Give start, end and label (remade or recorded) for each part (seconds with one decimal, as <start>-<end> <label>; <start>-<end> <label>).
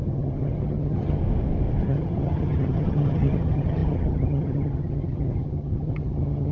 0.0-1.2 remade; 1.2-1.8 recorded; 1.8-6.5 remade